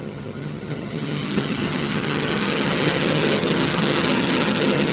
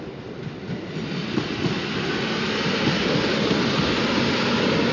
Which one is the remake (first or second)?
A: first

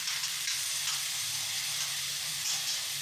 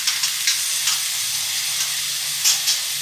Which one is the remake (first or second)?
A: first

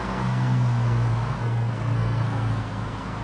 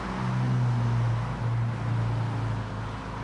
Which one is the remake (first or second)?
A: first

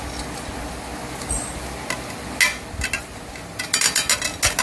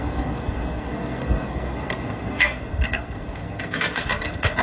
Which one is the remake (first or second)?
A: second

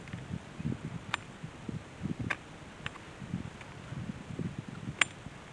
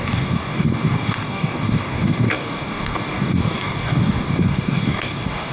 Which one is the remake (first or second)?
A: second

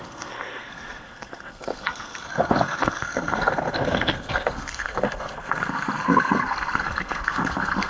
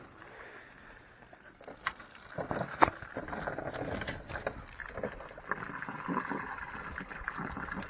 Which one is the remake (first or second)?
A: first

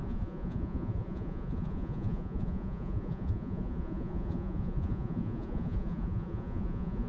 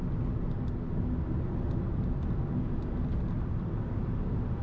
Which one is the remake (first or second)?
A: first